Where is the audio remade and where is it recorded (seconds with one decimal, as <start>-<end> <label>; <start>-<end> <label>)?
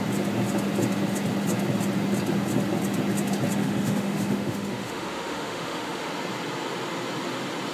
0.0-3.6 recorded; 3.6-6.1 remade; 6.1-7.7 recorded